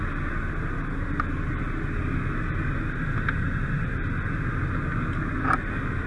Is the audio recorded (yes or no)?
yes